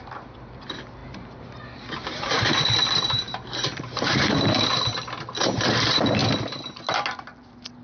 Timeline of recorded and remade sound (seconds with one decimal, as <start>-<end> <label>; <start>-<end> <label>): 0.0-1.0 recorded; 1.0-4.6 remade; 4.6-7.8 recorded